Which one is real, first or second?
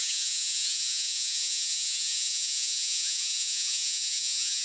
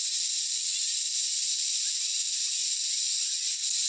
second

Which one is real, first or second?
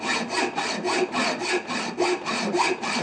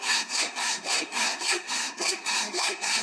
first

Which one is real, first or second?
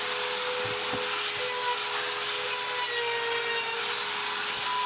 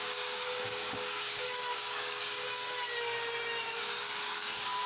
first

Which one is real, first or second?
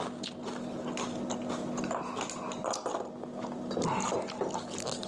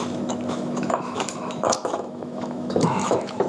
first